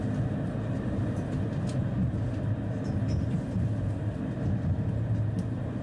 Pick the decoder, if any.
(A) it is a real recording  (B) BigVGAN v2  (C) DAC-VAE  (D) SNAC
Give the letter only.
A